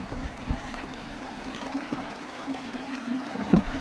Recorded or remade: remade